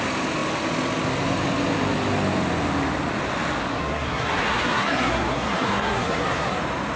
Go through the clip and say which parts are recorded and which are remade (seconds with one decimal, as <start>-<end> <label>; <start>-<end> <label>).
0.0-3.7 recorded; 3.7-6.6 remade; 6.6-7.0 recorded